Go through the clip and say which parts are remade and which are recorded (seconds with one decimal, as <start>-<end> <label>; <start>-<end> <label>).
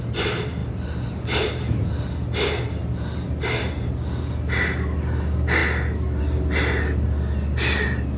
0.0-8.2 recorded